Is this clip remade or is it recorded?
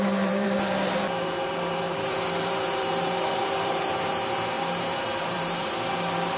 remade